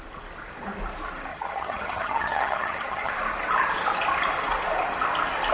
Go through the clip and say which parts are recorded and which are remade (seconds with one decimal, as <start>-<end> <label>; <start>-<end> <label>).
0.0-1.3 recorded; 1.3-3.1 remade; 3.1-5.5 recorded